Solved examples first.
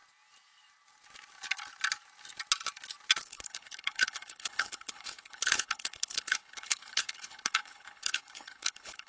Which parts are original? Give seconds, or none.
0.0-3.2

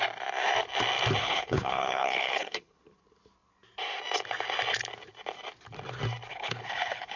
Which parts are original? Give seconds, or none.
0.0-1.2; 2.8-6.3

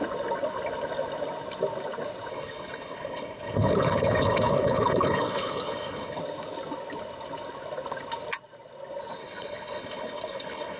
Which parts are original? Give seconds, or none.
0.0-2.3; 6.2-9.2

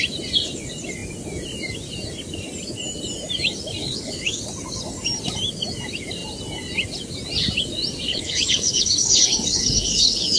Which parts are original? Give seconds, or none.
0.0-3.8; 4.4-8.1

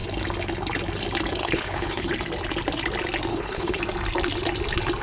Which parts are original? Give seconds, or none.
0.0-1.4; 2.1-3.3; 3.8-5.0

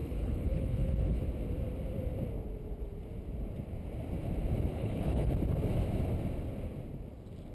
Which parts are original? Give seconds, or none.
1.2-4.7; 5.3-7.5

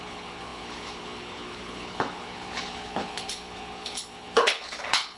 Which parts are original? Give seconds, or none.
none